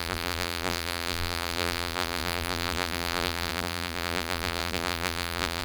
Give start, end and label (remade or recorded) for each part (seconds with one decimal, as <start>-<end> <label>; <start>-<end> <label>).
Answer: 0.0-5.6 remade